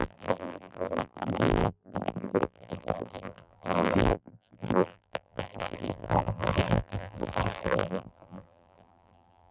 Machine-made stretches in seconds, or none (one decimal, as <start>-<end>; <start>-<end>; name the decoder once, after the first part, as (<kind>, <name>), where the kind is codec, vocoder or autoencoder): 0.0-9.5 (vocoder, BigVGAN v2)